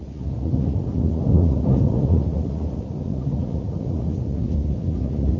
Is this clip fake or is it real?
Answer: fake